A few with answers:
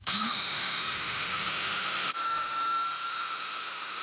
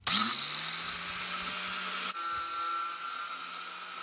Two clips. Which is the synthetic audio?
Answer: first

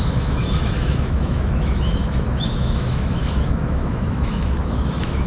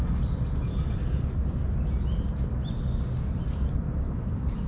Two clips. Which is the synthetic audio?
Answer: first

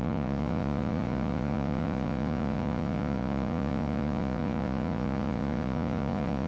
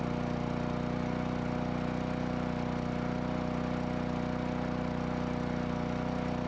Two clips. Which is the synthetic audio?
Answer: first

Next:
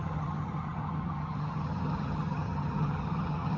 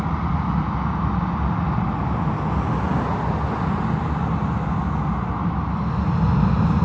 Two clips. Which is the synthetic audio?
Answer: first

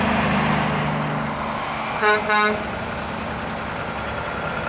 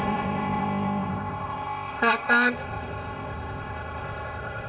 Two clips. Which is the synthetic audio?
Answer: second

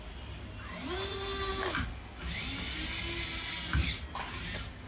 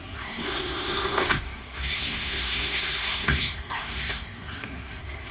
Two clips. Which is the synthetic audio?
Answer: second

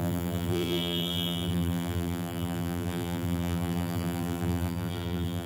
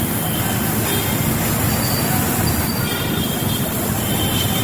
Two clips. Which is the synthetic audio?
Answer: first